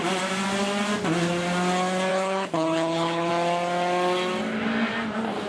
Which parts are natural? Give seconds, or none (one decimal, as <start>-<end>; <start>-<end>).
0.0-2.1; 3.3-5.5